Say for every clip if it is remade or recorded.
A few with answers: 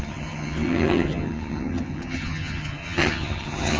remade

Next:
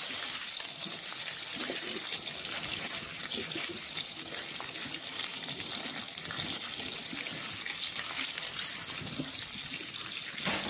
recorded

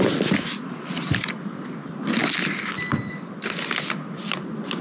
recorded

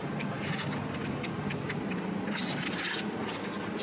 recorded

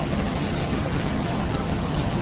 remade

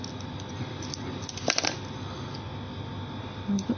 recorded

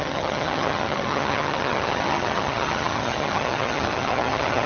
remade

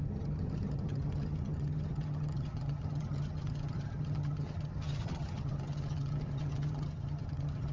remade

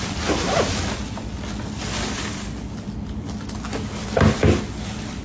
recorded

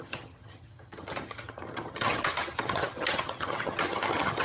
remade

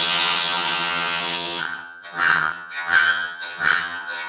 remade